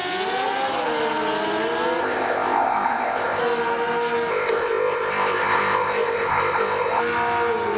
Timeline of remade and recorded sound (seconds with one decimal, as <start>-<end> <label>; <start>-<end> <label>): 0.0-2.0 recorded; 2.0-3.4 remade; 3.4-4.3 recorded; 4.3-7.0 remade; 7.0-7.8 recorded